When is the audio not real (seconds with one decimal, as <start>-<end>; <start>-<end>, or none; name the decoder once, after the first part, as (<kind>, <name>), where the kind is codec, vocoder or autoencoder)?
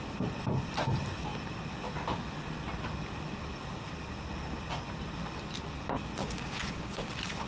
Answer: 6.2-7.1 (codec, DAC)